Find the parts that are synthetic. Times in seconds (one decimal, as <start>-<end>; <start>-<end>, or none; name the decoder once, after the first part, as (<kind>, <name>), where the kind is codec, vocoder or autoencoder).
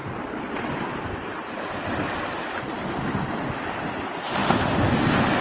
0.0-3.2 (vocoder, BigVGAN v2); 4.4-5.4